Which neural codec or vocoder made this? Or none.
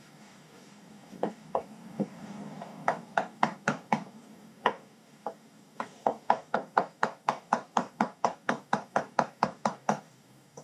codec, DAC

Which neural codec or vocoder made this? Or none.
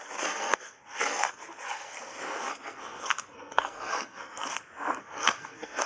codec, SNAC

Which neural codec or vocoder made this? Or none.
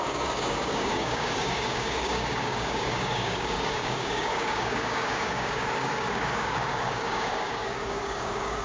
codec, DAC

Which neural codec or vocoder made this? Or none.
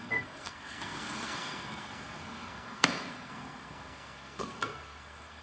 codec, SNAC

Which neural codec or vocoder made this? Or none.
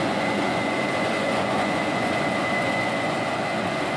vocoder, Vocos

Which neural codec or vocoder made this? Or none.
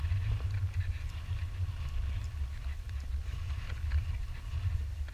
none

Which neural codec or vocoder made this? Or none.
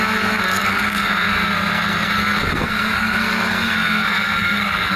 codec, SNAC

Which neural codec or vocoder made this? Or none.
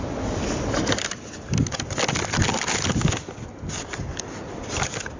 none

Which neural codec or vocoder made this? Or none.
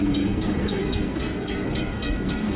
codec, SNAC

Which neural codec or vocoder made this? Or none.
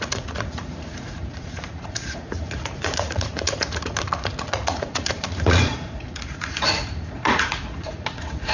vocoder, Vocos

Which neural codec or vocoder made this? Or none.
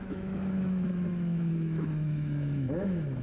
autoencoder, DAC-VAE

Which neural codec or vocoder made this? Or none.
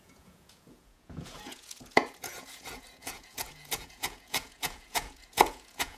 vocoder, Vocos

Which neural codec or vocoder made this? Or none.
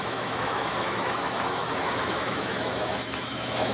autoencoder, DAC-VAE